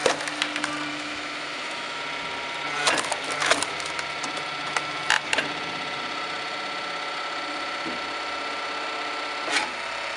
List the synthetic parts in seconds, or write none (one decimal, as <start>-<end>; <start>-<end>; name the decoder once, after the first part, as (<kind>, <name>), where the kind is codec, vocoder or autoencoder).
0.9-2.0 (autoencoder, DAC-VAE)